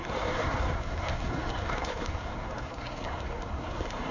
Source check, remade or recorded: remade